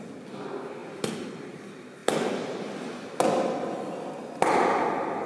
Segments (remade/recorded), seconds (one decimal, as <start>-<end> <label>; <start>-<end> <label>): 0.0-5.3 recorded